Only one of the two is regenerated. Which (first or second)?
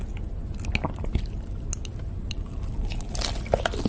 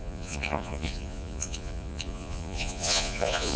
second